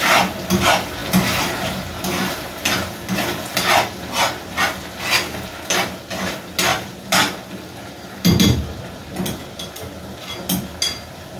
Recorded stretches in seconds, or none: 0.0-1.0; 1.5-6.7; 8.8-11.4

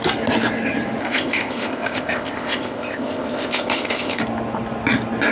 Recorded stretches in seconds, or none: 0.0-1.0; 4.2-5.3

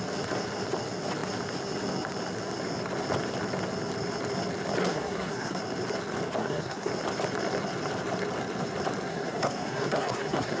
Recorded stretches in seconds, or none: 0.0-4.8; 5.6-6.4; 6.9-9.1

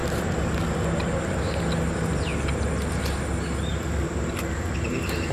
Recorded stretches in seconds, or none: 0.0-5.3

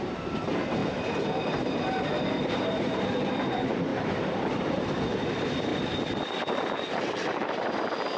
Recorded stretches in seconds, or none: 3.9-4.6; 5.7-6.2

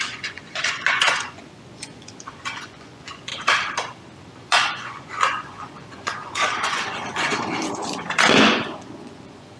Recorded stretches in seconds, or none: 3.3-4.4

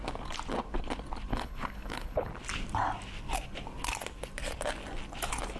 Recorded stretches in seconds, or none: 0.0-1.3; 2.3-5.6